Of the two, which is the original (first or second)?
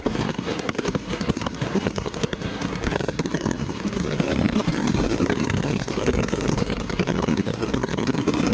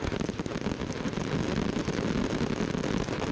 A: second